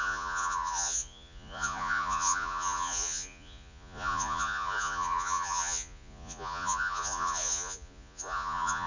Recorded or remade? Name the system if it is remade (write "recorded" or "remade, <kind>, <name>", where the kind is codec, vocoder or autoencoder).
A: remade, vocoder, Vocos